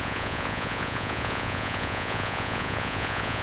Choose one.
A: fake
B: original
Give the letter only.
A